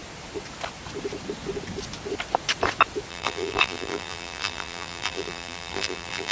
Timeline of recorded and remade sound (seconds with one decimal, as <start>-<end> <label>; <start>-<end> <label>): 0.0-3.1 recorded; 3.1-6.3 remade